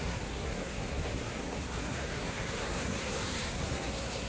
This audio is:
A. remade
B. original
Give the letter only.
A